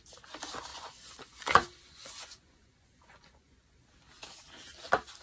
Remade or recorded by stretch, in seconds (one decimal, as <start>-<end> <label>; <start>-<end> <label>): 0.0-0.7 recorded; 0.7-3.8 remade; 3.8-5.2 recorded